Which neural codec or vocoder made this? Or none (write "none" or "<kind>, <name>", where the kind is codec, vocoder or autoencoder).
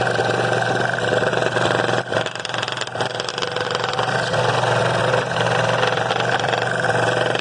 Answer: none